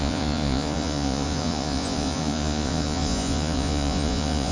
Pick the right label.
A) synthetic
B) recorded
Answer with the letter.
A